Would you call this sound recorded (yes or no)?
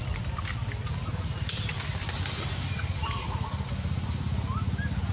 yes